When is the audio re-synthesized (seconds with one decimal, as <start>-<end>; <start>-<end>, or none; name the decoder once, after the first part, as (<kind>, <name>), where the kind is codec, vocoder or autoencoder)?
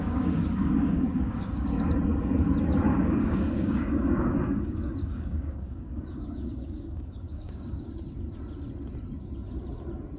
0.0-1.8 (codec, DAC); 2.9-7.9